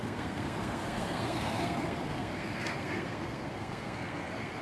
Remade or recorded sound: remade